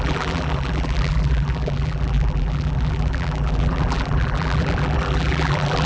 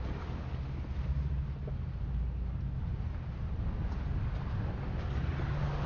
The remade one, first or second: first